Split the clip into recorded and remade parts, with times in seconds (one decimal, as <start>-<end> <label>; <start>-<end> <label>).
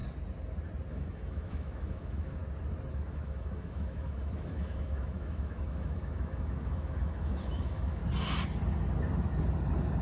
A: 0.0-0.9 recorded; 0.9-2.4 remade; 2.4-2.9 recorded; 2.9-8.0 remade; 8.0-10.0 recorded